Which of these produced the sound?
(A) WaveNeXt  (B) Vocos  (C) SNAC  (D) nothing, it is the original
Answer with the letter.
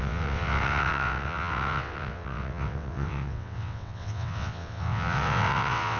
A